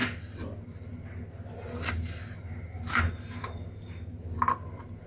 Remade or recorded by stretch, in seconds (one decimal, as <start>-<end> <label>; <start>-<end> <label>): 0.0-5.1 recorded